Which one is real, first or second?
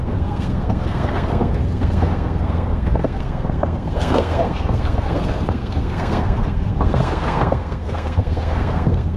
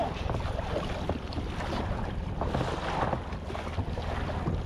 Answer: second